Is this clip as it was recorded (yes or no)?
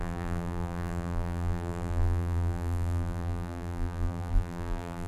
no